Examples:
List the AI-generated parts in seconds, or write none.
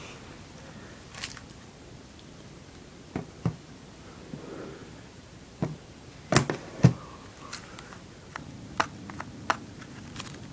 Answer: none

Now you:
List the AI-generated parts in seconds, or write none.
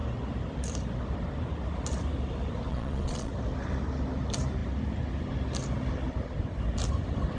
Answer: 2.7-3.3 (vocoder, Vocos)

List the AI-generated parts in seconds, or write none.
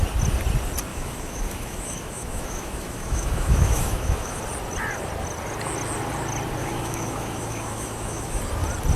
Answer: 0.9-4.4 (autoencoder, DAC-VAE); 6.6-8.4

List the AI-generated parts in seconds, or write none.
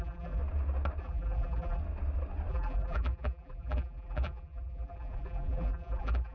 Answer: 0.0-0.4 (vocoder, BigVGAN v2); 1.0-1.8; 2.5-6.3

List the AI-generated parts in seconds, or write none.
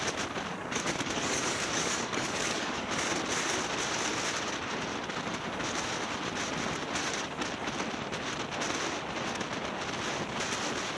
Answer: 0.5-3.1 (codec, DAC)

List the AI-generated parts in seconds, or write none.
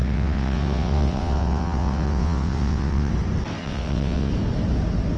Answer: 0.0-3.1 (vocoder, WaveNeXt); 3.6-4.3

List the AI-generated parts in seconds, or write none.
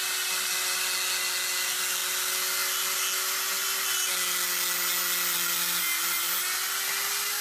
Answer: none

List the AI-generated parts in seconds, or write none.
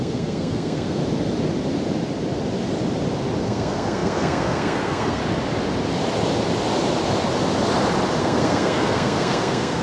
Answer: 0.0-1.0 (codec, SNAC); 3.4-5.2; 8.2-9.8